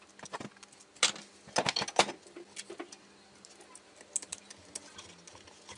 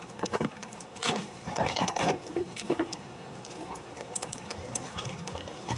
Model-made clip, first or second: second